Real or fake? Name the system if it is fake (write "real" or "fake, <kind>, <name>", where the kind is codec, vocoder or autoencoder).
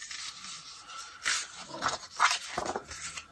real